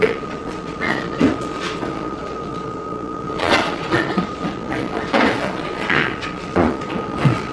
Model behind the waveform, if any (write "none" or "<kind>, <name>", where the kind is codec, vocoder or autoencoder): vocoder, Vocos